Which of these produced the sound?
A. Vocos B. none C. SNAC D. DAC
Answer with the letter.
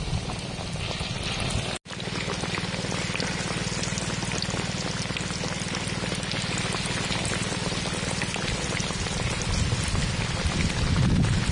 B